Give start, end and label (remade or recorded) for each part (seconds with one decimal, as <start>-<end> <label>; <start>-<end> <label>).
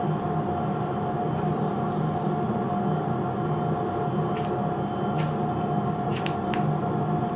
0.0-1.7 remade; 1.7-6.1 recorded; 6.1-7.4 remade